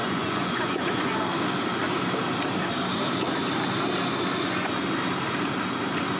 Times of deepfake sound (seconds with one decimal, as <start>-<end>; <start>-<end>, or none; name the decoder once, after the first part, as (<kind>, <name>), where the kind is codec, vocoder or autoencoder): 0.0-1.2 (vocoder, Vocos)